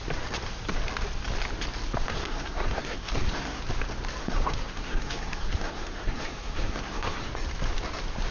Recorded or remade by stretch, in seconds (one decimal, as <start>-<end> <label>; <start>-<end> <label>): 0.0-2.1 recorded; 2.1-3.6 remade; 3.6-4.2 recorded; 4.2-7.3 remade; 7.3-8.3 recorded